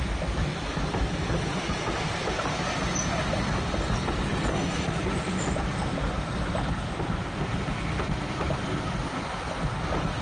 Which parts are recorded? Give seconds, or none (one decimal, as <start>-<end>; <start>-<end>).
0.0-4.5; 5.0-10.2